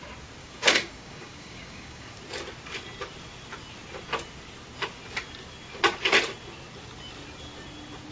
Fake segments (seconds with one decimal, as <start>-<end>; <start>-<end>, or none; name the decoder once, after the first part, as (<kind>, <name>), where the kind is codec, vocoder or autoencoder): 0.4-2.2 (codec, DAC)